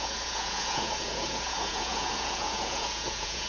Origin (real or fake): fake